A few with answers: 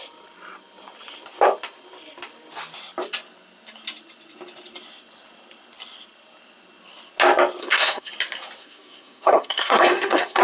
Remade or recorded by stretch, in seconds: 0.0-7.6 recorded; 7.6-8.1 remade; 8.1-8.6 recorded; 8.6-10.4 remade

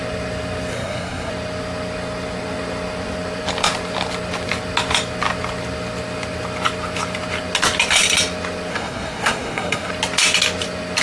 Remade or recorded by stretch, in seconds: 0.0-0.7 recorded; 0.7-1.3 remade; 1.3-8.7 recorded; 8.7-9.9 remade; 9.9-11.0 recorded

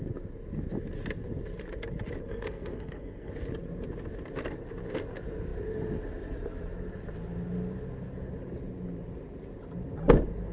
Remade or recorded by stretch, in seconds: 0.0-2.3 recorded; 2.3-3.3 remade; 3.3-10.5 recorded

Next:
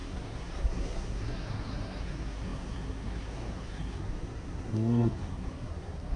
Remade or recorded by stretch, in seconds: 0.0-6.2 remade

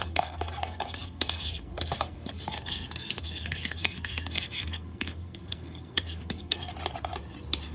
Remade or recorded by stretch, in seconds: 0.0-6.7 remade; 6.7-7.7 recorded